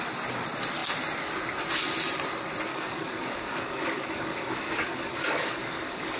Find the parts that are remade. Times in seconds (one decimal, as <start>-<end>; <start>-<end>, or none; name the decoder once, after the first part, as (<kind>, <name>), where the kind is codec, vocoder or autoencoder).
2.7-6.2 (codec, DAC)